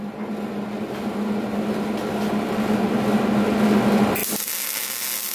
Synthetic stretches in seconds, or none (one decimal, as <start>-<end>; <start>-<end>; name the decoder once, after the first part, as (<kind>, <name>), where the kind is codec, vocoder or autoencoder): none